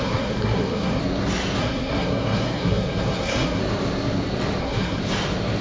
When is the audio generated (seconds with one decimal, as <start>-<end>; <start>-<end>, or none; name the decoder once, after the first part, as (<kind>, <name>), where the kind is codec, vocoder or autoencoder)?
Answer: 0.0-1.0 (codec, SNAC); 1.6-3.6; 4.6-5.0